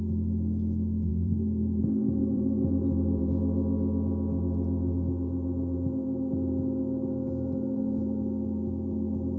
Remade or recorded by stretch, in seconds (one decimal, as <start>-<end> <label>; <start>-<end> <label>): 0.0-1.1 recorded; 1.1-1.8 remade; 1.8-2.2 recorded; 2.2-3.3 remade; 3.3-9.4 recorded